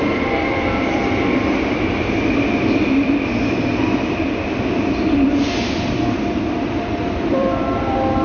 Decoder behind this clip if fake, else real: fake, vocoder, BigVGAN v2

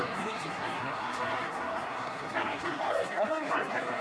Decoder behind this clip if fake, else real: fake, codec, SNAC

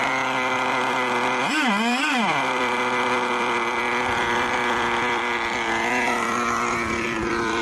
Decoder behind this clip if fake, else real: fake, vocoder, BigVGAN v2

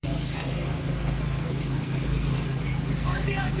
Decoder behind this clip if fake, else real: fake, codec, SNAC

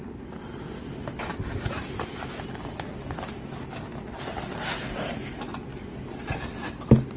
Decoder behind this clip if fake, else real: real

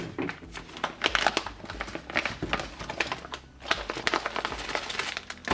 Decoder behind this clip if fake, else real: real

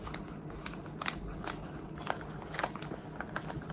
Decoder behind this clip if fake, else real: real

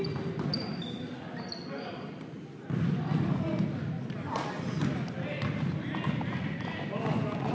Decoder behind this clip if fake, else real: real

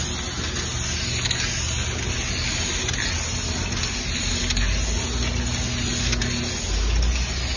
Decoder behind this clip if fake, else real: real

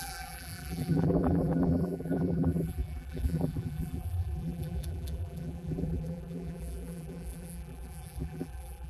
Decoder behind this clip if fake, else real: fake, vocoder, BigVGAN v2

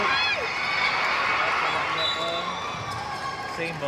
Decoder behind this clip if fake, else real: real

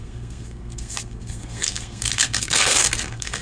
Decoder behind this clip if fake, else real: fake, codec, SNAC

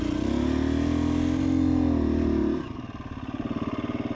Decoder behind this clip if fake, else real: real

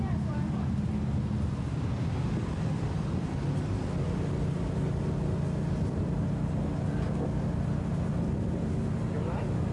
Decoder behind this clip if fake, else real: real